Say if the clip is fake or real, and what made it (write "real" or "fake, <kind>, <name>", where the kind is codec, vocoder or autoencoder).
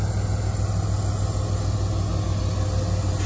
real